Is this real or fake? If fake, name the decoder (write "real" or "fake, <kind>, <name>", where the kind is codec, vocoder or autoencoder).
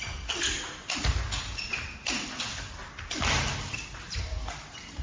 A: real